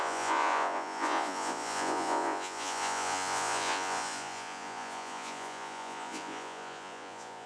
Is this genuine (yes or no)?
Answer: no